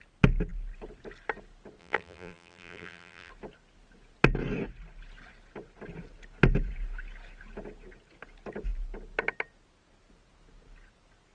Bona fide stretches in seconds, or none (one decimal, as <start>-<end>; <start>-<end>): 0.0-1.8; 3.3-11.3